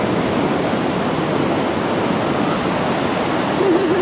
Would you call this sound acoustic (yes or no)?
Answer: yes